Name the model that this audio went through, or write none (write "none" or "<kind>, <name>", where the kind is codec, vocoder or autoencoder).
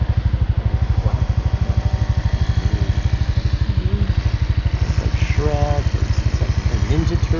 none